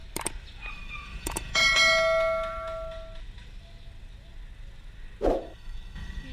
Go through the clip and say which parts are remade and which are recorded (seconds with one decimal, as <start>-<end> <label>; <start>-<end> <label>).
0.0-0.7 recorded; 0.7-1.6 remade; 1.6-5.4 recorded; 5.4-6.3 remade